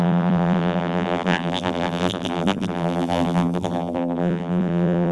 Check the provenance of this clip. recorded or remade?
remade